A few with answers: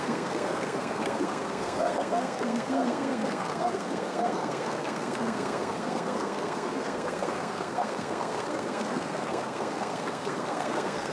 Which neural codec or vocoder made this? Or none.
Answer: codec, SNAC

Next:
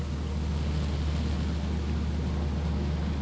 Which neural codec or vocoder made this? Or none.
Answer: none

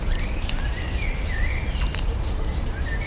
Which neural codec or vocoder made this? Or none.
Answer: none